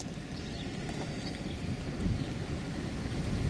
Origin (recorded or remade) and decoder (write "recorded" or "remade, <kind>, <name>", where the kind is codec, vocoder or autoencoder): recorded